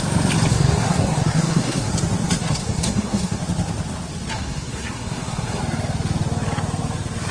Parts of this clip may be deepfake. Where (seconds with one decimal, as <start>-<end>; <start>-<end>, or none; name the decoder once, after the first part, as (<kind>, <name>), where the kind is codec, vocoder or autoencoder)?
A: 0.5-1.9 (codec, SNAC); 2.4-3.4; 4.3-5.6